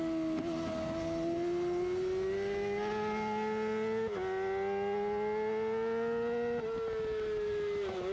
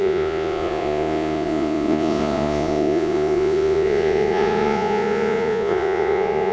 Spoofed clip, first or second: second